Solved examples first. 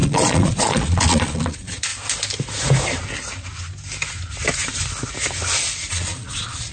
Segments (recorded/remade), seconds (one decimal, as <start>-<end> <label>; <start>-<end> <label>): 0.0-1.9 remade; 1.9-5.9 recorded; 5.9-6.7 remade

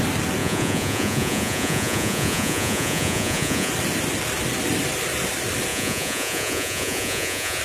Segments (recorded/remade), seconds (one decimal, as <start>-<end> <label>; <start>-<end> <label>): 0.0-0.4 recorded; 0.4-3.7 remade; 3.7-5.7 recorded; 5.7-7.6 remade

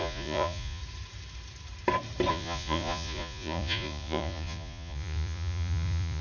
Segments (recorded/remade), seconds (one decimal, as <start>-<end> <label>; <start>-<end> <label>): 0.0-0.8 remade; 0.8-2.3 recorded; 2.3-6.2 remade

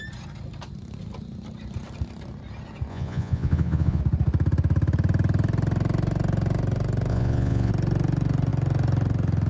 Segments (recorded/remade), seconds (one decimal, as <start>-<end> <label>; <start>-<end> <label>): 0.0-2.9 recorded; 2.9-4.0 remade; 4.0-7.1 recorded; 7.1-7.7 remade; 7.7-9.5 recorded

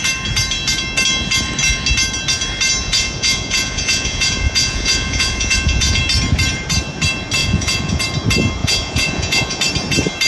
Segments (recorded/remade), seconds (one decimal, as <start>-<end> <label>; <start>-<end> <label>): 0.0-2.8 recorded; 2.8-6.0 remade; 6.0-7.4 recorded; 7.4-8.0 remade; 8.0-8.6 recorded; 8.6-9.6 remade; 9.6-10.3 recorded

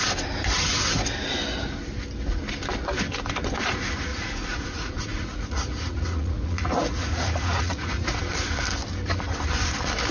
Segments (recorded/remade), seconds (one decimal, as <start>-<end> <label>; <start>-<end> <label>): 0.0-4.1 recorded; 4.1-8.2 remade; 8.2-10.1 recorded

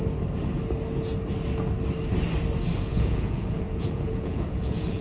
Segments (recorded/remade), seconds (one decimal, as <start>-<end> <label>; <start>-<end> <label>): 0.0-2.9 recorded; 2.9-5.0 remade

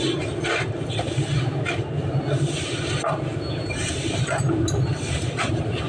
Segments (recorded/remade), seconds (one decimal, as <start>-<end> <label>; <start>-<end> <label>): 0.0-5.9 recorded